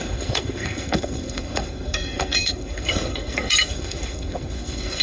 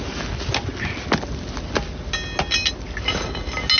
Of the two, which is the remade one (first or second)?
first